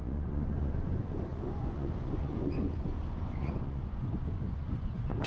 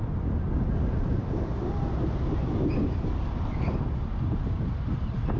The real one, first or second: second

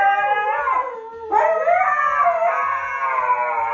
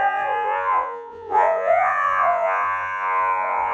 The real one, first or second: first